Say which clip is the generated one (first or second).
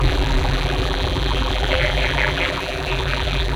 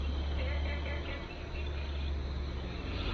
first